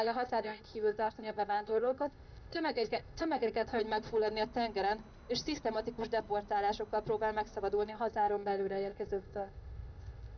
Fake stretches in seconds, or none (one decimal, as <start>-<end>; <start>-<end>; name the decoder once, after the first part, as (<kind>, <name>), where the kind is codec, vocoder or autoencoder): 0.0-3.8 (codec, ZipCodec); 7.9-10.4